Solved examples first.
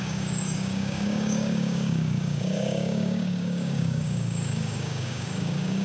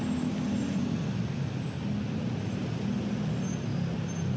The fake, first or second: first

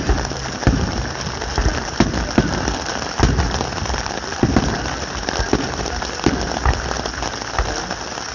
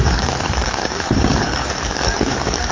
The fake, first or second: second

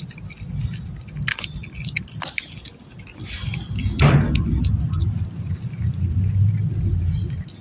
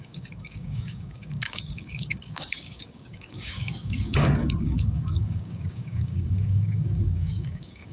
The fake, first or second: second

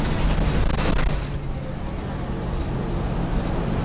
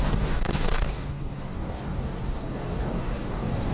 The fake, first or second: second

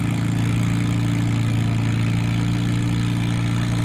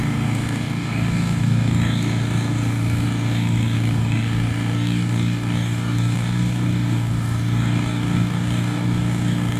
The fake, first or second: second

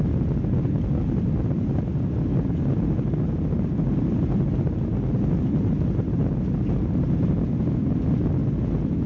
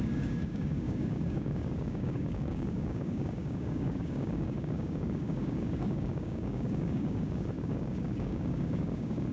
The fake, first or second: second